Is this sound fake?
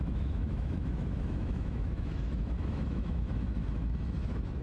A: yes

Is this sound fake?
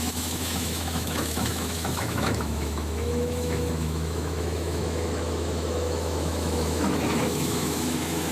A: yes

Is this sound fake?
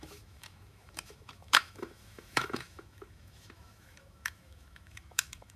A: yes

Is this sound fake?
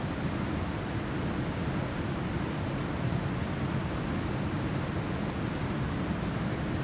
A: no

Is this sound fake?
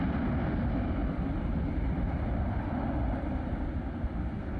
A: no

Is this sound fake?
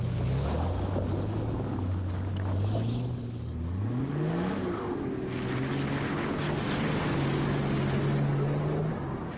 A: no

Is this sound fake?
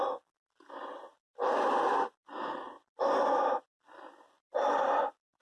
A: no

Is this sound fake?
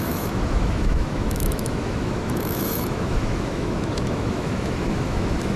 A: yes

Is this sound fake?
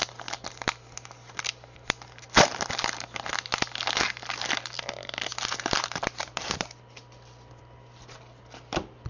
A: no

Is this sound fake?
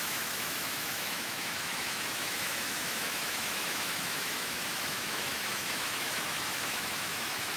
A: yes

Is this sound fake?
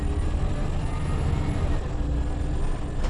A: no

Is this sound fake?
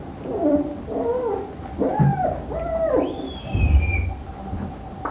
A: no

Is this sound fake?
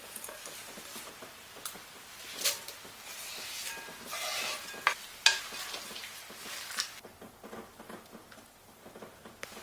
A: no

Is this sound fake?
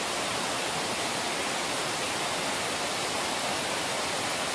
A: no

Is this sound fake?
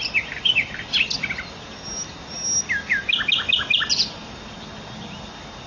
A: no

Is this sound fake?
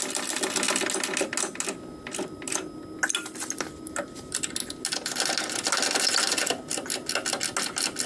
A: no